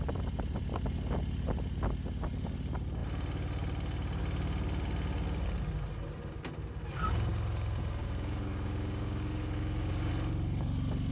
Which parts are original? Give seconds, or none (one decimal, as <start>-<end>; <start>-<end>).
0.0-8.0; 10.1-11.1